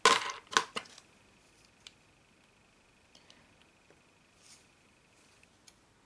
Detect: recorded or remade recorded